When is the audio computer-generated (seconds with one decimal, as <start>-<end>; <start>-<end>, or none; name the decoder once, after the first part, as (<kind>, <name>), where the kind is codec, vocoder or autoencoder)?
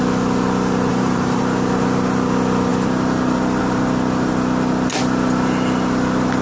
0.9-1.4 (vocoder, BigVGAN v2)